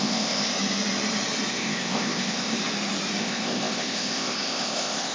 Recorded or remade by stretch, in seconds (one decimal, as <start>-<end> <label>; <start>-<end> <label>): 0.0-0.5 remade; 0.5-1.5 recorded; 1.5-2.6 remade; 2.6-3.2 recorded; 3.2-5.1 remade